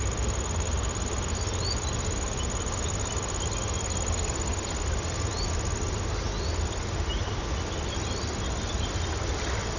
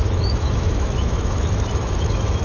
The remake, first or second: second